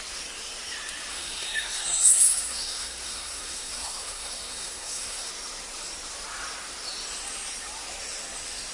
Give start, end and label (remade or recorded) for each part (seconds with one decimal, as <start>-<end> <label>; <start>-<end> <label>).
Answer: 0.0-1.1 recorded; 1.1-5.3 remade; 5.3-8.7 recorded